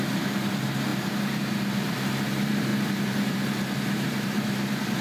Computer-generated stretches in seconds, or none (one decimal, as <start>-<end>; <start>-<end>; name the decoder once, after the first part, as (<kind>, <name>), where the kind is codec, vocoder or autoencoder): 0.0-5.0 (vocoder, BigVGAN v2)